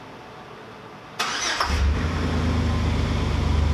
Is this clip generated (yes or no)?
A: no